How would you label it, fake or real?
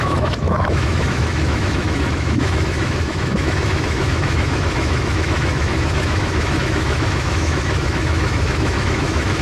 fake